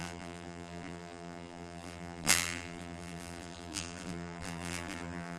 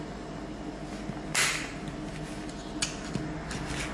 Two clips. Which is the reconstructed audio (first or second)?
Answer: first